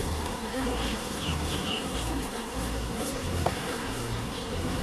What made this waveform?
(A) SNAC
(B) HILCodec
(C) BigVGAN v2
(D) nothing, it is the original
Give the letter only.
A